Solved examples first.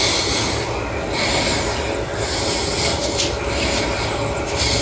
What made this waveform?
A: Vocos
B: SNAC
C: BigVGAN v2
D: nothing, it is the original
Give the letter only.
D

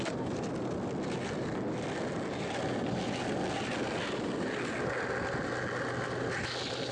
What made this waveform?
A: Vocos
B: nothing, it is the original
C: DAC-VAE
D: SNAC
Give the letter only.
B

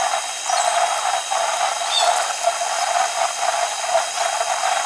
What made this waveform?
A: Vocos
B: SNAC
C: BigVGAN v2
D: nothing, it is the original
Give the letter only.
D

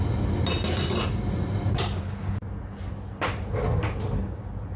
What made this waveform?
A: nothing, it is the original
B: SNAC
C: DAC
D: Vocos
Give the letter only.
A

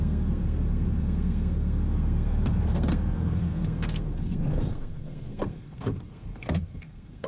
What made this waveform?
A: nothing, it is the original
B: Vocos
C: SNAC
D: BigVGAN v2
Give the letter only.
C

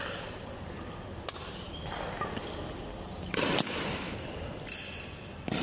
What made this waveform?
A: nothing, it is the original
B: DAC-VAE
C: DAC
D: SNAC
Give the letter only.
A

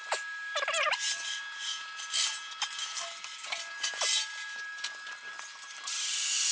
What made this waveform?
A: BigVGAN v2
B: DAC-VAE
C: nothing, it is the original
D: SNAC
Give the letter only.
C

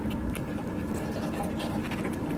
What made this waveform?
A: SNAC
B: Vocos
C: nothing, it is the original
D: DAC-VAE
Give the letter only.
C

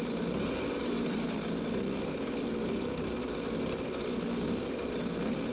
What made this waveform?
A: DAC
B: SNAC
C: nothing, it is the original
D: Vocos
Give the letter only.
C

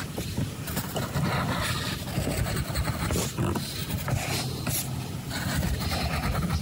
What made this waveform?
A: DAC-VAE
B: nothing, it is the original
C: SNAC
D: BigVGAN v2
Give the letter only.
B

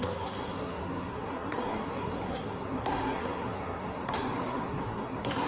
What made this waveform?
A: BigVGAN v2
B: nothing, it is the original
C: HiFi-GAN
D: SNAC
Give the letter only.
D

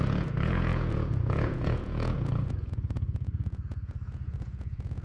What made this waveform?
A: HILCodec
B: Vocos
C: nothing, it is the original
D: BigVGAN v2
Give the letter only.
B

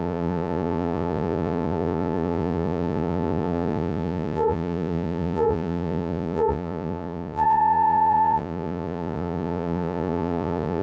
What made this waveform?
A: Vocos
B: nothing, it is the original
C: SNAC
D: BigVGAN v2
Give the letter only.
A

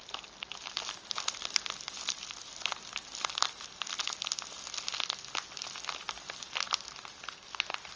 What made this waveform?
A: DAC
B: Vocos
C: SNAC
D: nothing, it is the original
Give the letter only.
D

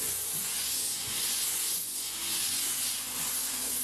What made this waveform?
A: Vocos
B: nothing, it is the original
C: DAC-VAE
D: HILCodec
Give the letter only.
A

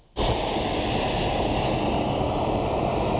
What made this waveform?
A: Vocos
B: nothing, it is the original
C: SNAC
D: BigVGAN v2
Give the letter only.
B